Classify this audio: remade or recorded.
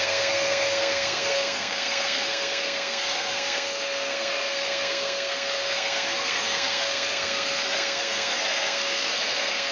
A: remade